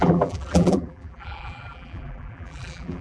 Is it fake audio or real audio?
fake